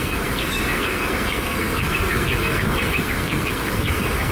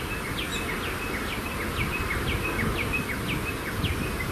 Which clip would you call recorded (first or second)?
second